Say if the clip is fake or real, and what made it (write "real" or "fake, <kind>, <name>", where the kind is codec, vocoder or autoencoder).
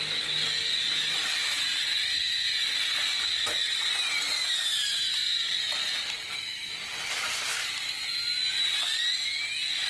real